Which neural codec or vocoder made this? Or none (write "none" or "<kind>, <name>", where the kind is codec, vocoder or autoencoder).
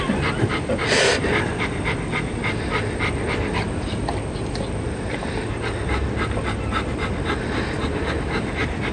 none